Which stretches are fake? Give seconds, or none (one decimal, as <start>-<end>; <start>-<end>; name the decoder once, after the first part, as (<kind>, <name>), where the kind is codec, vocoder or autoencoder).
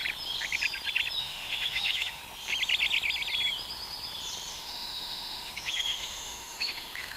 1.2-2.2 (autoencoder, DAC-VAE); 4.5-7.2